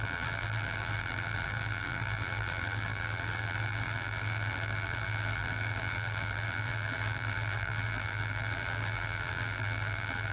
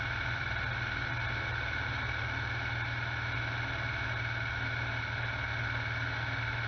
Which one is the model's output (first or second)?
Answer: first